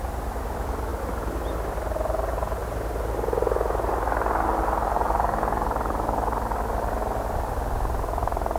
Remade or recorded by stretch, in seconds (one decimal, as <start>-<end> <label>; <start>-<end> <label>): 0.0-8.6 recorded